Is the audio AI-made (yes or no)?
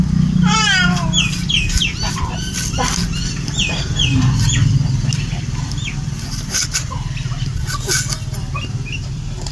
no